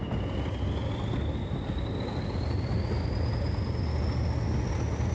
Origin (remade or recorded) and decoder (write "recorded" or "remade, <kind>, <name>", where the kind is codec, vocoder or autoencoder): recorded